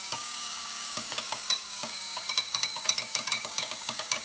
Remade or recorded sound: remade